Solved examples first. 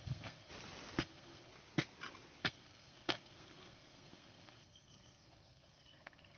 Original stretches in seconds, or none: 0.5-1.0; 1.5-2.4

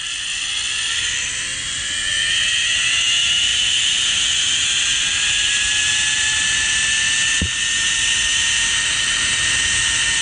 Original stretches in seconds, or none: 0.0-10.2